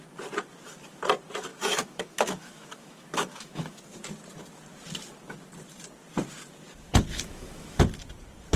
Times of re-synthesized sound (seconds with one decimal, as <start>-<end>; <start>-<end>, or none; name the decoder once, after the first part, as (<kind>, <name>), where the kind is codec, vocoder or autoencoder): 1.5-3.8 (autoencoder, DAC-VAE); 7.1-7.8